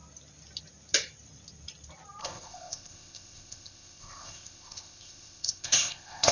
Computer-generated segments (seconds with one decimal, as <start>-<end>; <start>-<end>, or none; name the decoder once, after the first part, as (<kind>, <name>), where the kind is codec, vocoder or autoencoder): 2.2-6.3 (codec, ZipCodec)